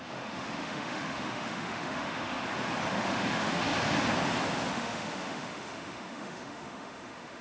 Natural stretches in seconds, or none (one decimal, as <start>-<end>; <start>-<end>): 2.4-2.9; 3.7-4.7